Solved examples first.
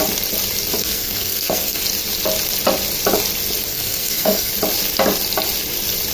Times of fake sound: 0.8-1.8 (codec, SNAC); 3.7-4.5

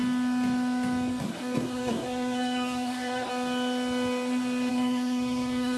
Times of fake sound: 1.2-3.3 (codec, SNAC); 4.7-5.8